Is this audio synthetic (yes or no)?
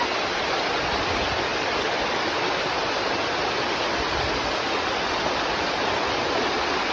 no